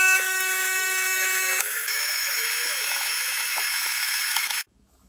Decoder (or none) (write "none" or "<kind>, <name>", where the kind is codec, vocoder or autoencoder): autoencoder, DAC-VAE